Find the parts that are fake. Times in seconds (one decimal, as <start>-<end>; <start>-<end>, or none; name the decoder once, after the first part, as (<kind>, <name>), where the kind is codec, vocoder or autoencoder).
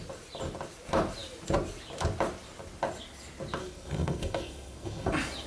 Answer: 3.6-5.1 (codec, SNAC)